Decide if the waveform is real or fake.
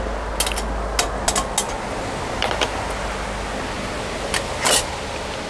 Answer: real